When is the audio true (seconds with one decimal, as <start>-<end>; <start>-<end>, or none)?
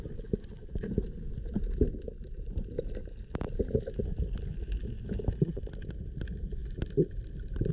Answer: 0.0-7.7